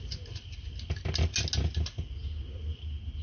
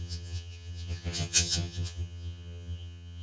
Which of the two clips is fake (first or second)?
second